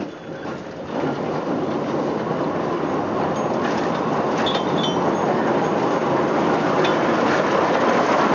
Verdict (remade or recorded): recorded